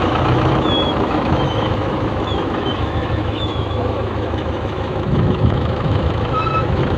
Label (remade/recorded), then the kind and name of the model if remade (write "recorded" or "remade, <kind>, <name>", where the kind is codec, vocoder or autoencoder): remade, autoencoder, DAC-VAE